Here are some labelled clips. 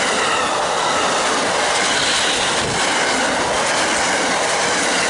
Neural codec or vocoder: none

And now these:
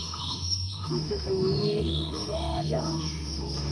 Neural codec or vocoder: autoencoder, DAC-VAE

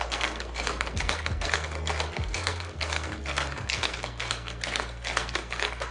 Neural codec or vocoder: codec, SNAC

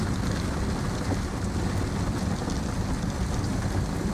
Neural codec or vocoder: none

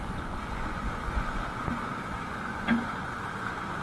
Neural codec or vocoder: vocoder, Vocos